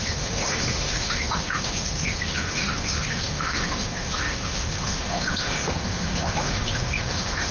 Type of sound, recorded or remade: remade